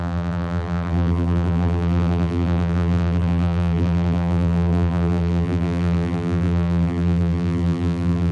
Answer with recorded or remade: remade